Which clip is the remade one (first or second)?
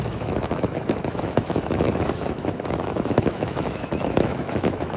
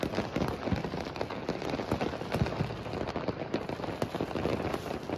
first